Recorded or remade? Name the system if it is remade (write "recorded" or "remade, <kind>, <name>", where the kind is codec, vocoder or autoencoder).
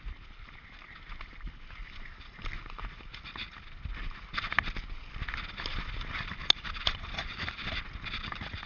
recorded